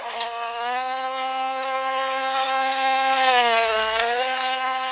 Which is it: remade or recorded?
remade